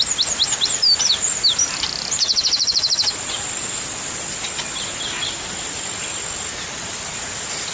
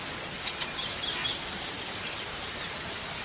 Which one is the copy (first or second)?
second